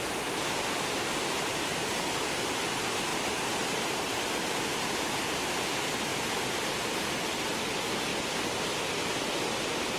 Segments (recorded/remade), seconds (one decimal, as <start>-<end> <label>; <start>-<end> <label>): 0.0-3.1 recorded; 3.1-5.2 remade; 5.2-10.0 recorded